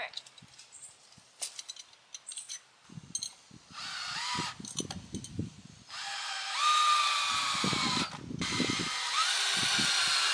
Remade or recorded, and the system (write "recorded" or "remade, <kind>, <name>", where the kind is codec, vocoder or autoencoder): recorded